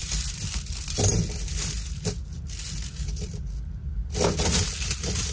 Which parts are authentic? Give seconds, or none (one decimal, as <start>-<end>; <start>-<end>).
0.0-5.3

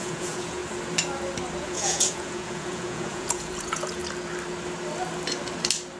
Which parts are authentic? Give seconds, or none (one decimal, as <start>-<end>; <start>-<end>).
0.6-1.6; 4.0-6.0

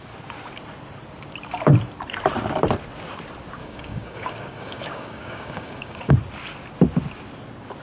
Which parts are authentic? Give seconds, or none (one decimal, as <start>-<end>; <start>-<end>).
0.0-3.6; 6.1-7.8

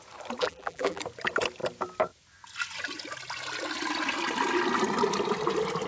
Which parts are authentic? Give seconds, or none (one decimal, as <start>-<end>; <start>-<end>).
0.0-0.4; 1.0-5.9

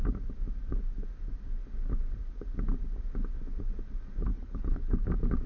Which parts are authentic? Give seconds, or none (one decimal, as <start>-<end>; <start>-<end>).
0.0-4.3; 5.1-5.5